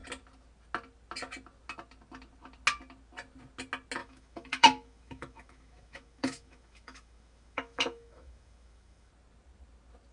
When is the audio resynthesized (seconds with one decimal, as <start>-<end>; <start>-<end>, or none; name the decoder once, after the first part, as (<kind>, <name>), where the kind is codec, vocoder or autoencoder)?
4.0-9.1 (autoencoder, DAC-VAE)